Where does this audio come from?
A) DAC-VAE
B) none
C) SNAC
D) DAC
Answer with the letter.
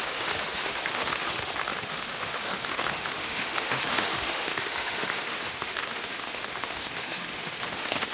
A